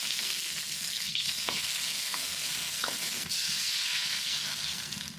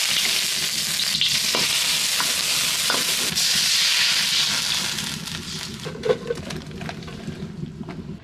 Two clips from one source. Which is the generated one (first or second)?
first